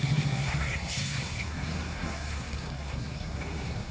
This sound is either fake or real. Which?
fake